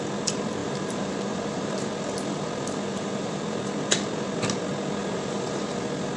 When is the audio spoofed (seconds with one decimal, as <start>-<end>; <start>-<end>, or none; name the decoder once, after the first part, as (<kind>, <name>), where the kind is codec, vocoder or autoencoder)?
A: 0.6-1.9 (vocoder, BigVGAN v2); 2.9-3.4; 5.0-5.6